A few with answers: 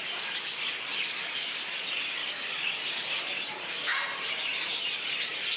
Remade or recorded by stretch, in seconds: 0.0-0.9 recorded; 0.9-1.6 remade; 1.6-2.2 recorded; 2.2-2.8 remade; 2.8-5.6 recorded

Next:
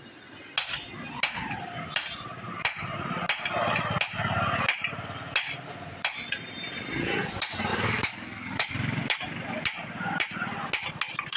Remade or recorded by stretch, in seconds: 0.0-7.7 recorded; 7.7-8.7 remade; 8.7-11.4 recorded